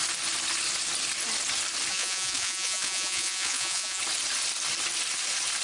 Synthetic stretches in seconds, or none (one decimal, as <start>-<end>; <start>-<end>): 1.9-4.0